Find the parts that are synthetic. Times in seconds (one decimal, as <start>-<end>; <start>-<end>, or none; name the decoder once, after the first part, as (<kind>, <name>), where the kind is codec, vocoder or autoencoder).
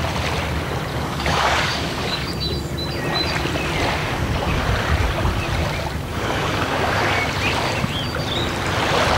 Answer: 0.9-2.3 (codec, DAC); 4.0-4.6; 6.1-7.2